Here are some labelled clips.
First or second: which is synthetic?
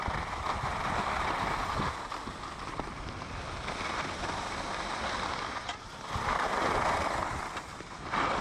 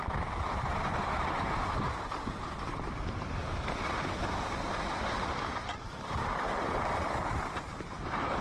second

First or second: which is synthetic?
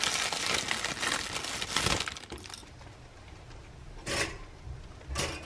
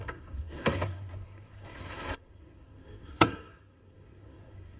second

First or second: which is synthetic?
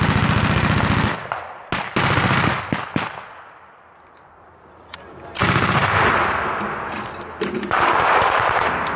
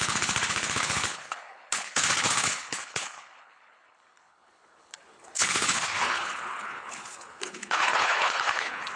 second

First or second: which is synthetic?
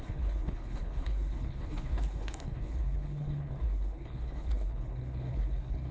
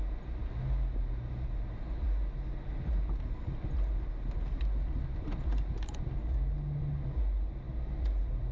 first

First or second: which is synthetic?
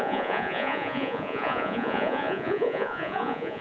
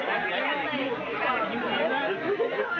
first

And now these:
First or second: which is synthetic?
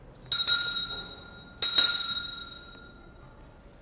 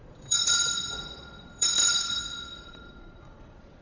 second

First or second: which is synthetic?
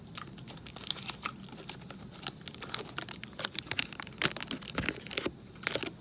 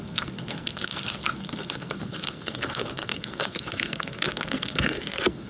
second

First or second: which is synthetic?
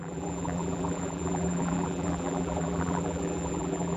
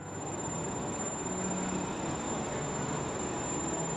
first